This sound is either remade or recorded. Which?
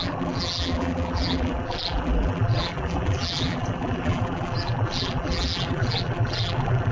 remade